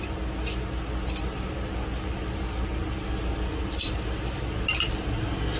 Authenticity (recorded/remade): recorded